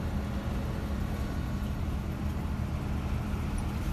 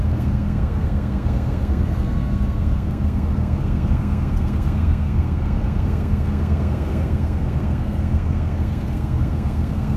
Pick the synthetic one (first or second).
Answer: second